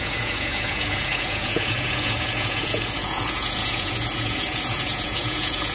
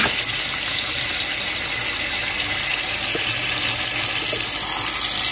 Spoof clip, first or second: first